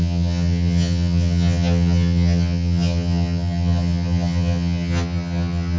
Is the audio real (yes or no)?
no